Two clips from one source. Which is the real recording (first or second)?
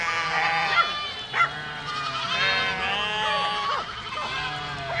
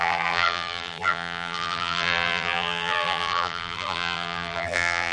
first